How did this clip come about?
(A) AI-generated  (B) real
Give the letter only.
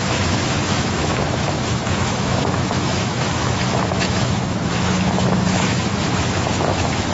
A